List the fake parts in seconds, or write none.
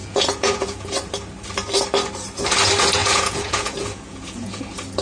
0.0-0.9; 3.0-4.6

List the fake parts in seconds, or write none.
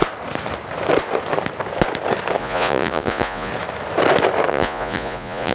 2.4-3.5; 4.5-5.5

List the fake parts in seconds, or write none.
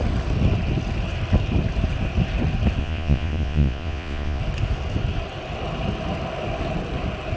2.8-4.4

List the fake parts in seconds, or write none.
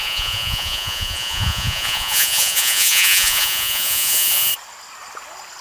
0.0-4.5